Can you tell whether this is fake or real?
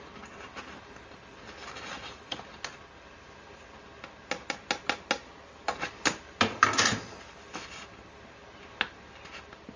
real